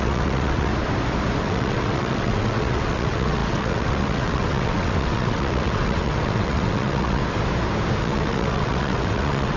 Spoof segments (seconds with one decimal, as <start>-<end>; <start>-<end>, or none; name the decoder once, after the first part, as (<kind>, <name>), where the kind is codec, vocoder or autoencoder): 0.0-0.7 (vocoder, WaveNeXt); 1.4-7.2; 8.0-9.6